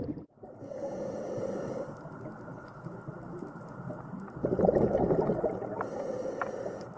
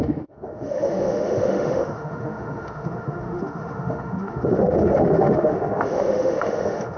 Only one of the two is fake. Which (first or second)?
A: second